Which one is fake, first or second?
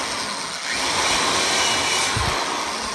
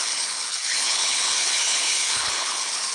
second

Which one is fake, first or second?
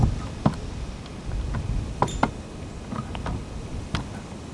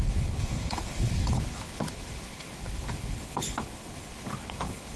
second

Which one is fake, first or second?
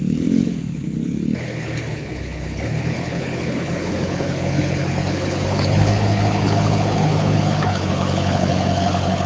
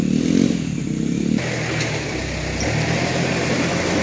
first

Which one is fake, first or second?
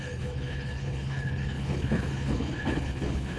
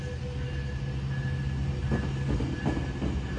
first